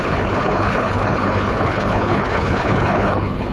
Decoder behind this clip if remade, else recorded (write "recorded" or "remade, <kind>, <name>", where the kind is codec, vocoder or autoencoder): remade, codec, HILCodec